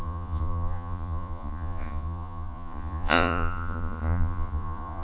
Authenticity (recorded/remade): remade